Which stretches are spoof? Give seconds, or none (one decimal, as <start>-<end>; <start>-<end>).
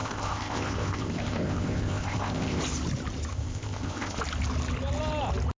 0.0-2.6; 3.3-4.2